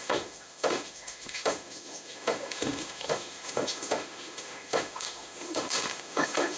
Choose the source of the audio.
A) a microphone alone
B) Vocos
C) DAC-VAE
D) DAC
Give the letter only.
C